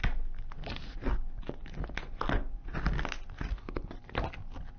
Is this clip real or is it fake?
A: real